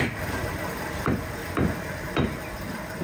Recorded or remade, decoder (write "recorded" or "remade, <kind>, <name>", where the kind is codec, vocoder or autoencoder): remade, vocoder, BigVGAN v2